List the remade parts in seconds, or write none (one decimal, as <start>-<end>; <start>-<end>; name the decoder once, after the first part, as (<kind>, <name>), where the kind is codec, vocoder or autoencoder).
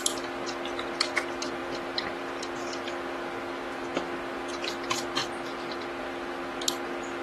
none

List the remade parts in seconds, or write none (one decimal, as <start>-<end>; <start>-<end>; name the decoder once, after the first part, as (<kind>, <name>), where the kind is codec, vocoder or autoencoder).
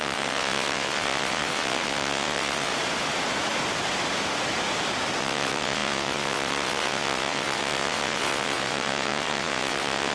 0.0-2.7 (vocoder, WaveNeXt); 5.2-10.1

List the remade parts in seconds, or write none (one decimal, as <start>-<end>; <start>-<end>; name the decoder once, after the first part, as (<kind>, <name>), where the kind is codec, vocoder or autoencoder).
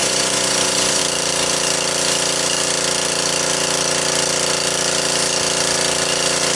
0.0-1.0 (vocoder, Vocos)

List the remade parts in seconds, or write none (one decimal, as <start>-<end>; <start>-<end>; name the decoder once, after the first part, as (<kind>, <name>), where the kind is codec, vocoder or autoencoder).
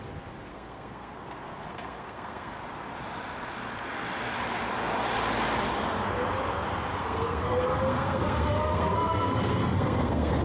0.5-2.5 (codec, SNAC); 6.9-10.4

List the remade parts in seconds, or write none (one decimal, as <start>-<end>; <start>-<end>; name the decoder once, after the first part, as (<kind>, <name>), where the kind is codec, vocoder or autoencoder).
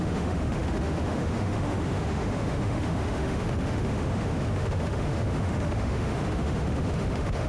0.0-7.5 (autoencoder, DAC-VAE)